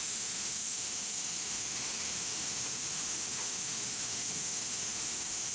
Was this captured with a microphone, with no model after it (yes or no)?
no